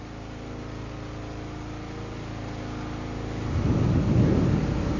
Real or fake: real